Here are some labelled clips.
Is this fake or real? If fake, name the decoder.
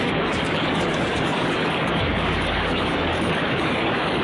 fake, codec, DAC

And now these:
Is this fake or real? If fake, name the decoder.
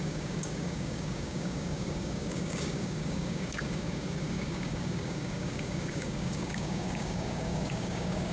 fake, codec, DAC